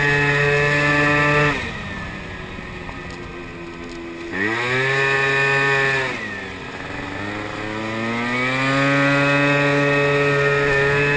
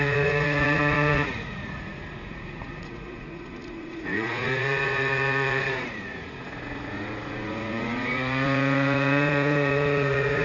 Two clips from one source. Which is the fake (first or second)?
second